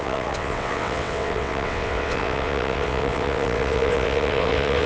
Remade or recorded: remade